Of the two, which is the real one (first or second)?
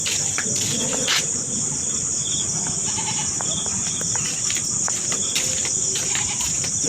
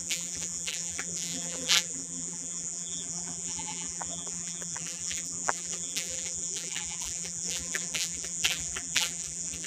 first